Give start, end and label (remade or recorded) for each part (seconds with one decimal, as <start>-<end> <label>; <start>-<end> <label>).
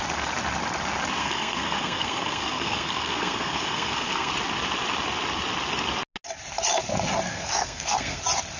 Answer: 0.0-1.2 recorded; 1.2-4.3 remade; 4.3-7.3 recorded; 7.3-8.2 remade; 8.2-8.6 recorded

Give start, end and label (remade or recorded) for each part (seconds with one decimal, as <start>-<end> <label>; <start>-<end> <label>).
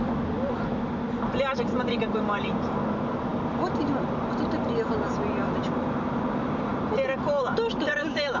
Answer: 0.0-8.4 recorded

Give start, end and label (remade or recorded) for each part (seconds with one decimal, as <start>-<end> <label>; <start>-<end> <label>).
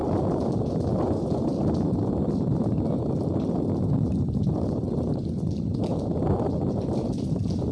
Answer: 0.0-2.0 recorded; 2.0-4.1 remade; 4.1-5.1 recorded; 5.1-7.7 remade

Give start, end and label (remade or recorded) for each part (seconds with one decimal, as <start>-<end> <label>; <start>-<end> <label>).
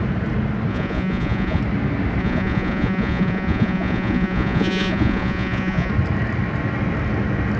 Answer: 0.0-0.7 recorded; 0.7-1.6 remade; 1.6-2.2 recorded; 2.2-5.9 remade; 5.9-7.6 recorded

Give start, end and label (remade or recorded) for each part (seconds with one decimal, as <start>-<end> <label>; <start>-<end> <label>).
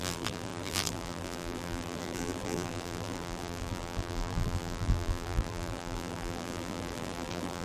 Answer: 0.0-7.6 remade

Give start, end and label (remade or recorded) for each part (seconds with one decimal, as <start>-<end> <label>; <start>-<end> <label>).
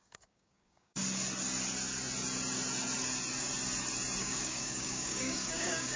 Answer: 0.0-1.0 remade; 1.0-4.2 recorded; 4.2-6.0 remade